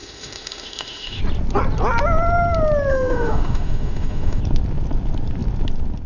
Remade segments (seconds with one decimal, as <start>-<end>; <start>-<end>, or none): 0.0-1.2; 2.9-4.4